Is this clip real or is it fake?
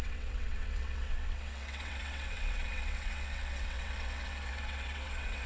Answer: fake